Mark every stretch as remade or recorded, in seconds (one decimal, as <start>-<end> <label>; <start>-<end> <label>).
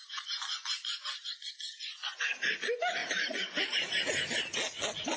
0.0-5.2 recorded